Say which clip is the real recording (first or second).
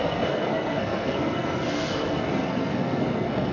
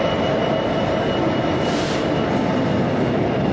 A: second